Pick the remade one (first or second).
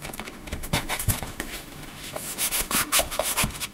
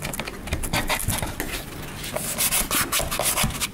first